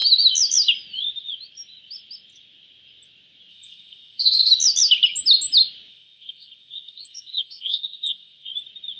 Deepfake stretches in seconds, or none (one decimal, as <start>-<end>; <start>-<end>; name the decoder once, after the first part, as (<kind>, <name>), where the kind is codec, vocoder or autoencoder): 3.5-4.5 (codec, SNAC); 5.9-8.5